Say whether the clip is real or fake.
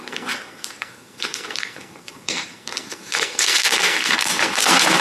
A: fake